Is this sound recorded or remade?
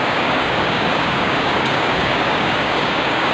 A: remade